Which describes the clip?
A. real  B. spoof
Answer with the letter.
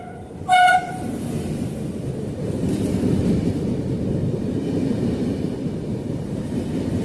B